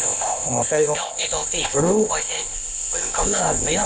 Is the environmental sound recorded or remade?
remade